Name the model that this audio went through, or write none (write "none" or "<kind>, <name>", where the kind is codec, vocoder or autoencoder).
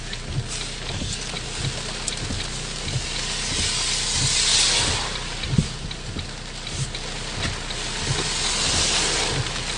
none